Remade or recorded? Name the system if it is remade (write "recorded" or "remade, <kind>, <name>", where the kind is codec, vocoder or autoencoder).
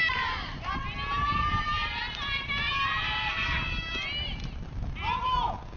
recorded